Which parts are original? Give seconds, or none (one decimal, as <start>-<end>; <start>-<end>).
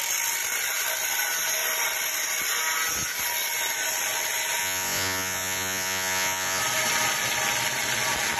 0.0-4.6; 6.6-8.4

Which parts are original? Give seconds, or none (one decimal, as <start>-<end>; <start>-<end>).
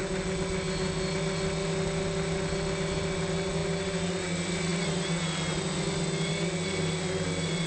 0.0-7.7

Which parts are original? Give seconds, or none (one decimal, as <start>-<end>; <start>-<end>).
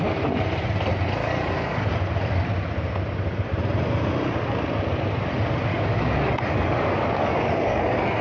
0.0-1.2; 1.9-5.7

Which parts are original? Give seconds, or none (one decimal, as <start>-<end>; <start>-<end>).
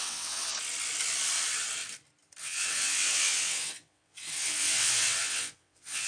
0.5-2.4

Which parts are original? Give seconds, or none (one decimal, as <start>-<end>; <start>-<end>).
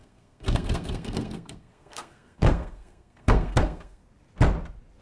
4.0-5.0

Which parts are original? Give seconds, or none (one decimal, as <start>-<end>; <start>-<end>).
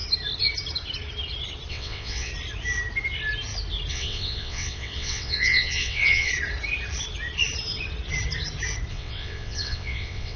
0.0-1.7; 2.3-3.9; 6.3-8.9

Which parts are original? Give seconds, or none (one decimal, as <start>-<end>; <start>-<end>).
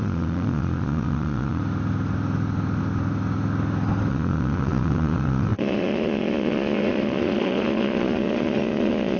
1.6-4.1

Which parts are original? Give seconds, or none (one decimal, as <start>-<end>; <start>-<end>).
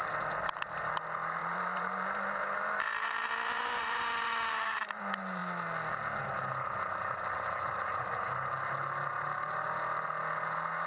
0.0-1.4; 5.0-10.9